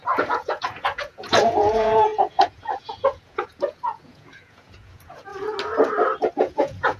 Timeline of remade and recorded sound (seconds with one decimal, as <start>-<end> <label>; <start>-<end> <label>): 0.0-5.3 remade; 5.3-6.3 recorded; 6.3-7.0 remade